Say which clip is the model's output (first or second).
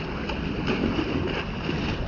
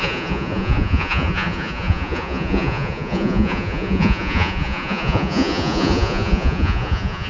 second